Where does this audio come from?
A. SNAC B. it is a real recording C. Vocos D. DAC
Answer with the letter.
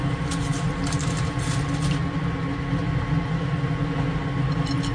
B